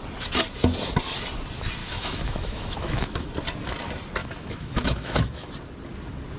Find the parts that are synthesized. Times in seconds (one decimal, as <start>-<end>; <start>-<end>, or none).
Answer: 1.8-3.3; 4.2-5.5